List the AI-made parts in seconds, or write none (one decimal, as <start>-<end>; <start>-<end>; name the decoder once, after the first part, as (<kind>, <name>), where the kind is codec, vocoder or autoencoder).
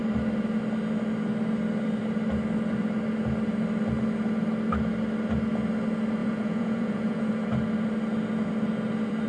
6.2-7.3 (vocoder, Vocos)